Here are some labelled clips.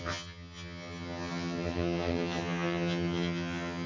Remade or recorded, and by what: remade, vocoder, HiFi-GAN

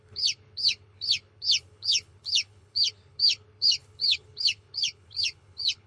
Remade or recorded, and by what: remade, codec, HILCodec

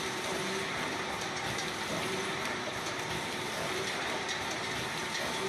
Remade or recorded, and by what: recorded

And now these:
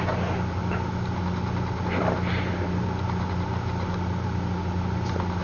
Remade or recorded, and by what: recorded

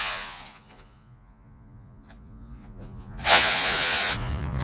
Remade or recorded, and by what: remade, vocoder, Vocos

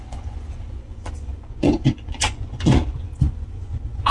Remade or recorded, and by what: remade, vocoder, Vocos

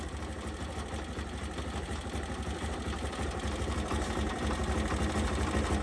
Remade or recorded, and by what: recorded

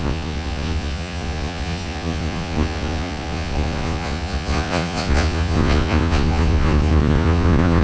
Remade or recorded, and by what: remade, vocoder, Vocos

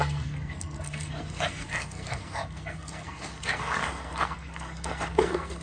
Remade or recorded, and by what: remade, codec, SNAC